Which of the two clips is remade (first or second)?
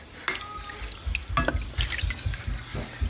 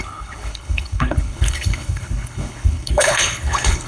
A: second